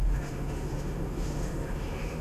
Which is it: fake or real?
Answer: fake